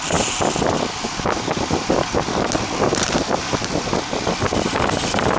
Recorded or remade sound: recorded